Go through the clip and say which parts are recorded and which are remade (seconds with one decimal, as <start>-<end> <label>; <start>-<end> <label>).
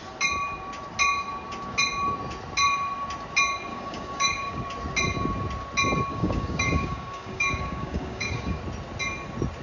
0.0-3.7 recorded; 3.7-4.6 remade; 4.6-6.1 recorded; 6.1-8.6 remade; 8.6-9.6 recorded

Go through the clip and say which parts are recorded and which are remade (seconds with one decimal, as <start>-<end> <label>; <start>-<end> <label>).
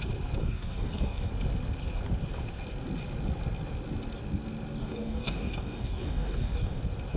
0.0-0.4 recorded; 0.4-1.3 remade; 1.3-4.8 recorded; 4.8-6.8 remade; 6.8-7.2 recorded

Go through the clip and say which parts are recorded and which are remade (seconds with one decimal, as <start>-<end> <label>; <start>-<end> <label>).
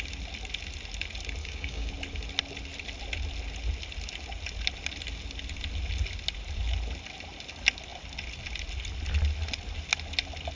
0.0-1.4 recorded; 1.4-1.9 remade; 1.9-10.6 recorded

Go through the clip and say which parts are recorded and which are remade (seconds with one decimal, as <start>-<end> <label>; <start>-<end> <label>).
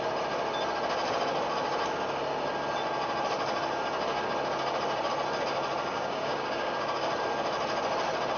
0.0-5.9 recorded; 5.9-7.1 remade; 7.1-8.4 recorded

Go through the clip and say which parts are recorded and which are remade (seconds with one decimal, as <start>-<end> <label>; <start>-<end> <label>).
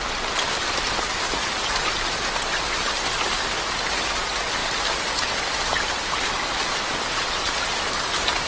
0.0-8.5 recorded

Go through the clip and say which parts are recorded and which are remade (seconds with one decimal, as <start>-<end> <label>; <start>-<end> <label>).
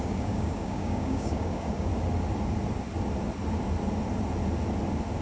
0.0-1.9 remade; 1.9-5.2 recorded